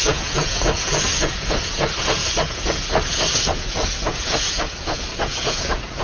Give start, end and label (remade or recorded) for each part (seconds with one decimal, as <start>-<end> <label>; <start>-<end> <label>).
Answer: 0.0-6.0 remade